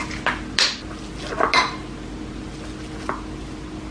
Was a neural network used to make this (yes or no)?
no